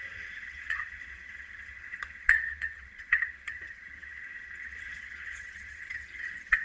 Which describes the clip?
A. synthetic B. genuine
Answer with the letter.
A